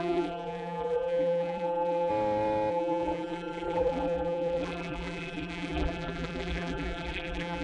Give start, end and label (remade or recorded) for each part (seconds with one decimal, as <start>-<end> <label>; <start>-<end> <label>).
0.0-2.1 remade; 2.1-2.7 recorded; 2.7-7.6 remade